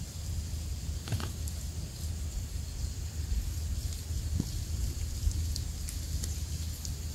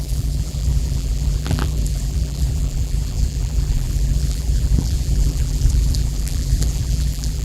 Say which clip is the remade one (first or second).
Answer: second